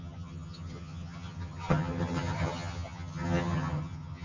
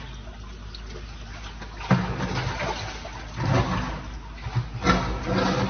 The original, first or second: second